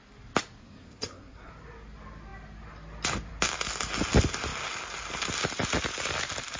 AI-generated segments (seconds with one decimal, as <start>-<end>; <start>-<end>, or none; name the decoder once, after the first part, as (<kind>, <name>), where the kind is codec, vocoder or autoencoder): 0.6-1.5 (codec, SNAC)